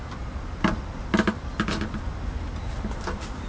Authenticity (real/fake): real